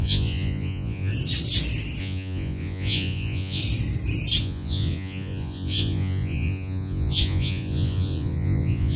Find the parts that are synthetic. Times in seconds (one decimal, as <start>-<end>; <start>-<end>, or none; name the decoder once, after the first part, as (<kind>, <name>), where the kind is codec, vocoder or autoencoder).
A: 0.0-1.1 (vocoder, Vocos); 2.0-3.6; 4.4-9.0